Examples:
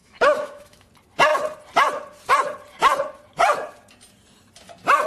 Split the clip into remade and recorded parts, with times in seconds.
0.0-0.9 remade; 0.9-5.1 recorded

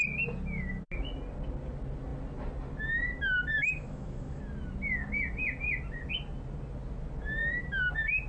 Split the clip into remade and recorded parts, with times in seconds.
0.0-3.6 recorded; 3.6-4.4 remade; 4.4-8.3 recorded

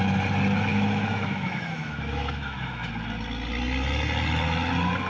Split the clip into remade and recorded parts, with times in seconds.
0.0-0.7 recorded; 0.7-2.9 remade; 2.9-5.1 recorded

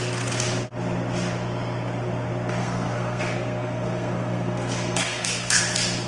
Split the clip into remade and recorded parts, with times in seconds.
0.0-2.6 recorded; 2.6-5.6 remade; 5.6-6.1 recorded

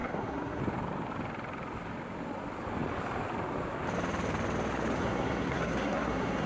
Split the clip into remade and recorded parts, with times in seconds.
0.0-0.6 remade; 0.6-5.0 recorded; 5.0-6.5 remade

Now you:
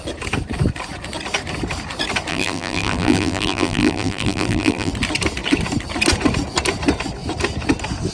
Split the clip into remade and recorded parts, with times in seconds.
0.0-2.3 recorded; 2.3-4.9 remade; 4.9-8.1 recorded

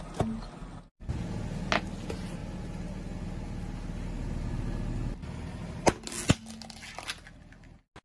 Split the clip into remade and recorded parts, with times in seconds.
0.0-8.0 recorded